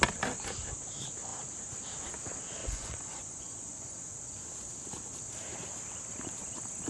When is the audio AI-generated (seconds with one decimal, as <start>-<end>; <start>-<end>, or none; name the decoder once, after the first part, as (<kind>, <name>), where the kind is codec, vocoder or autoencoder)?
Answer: 2.6-4.1 (vocoder, Vocos)